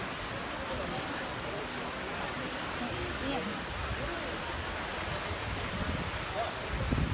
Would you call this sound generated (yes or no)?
no